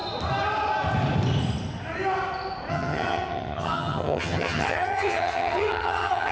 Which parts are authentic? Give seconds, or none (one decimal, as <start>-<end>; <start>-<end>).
0.0-2.7